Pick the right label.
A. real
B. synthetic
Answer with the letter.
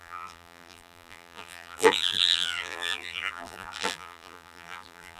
B